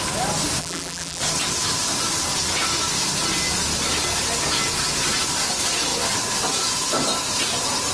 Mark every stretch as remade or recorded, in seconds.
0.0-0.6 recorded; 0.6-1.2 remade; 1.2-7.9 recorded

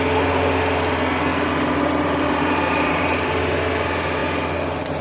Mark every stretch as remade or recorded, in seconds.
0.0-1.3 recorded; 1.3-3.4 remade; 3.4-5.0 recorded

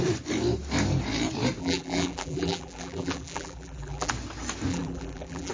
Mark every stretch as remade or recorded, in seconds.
0.0-1.6 recorded; 1.6-4.1 remade; 4.1-4.7 recorded; 4.7-5.5 remade

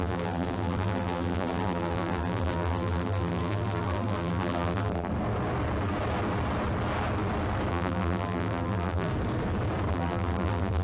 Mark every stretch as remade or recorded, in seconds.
0.0-5.1 remade; 5.1-7.7 recorded; 7.7-9.1 remade; 9.1-9.9 recorded; 9.9-10.8 remade